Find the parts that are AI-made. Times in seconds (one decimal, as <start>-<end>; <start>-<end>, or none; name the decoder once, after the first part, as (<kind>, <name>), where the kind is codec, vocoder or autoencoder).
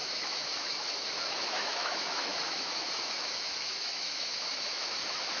0.0-5.4 (autoencoder, DAC-VAE)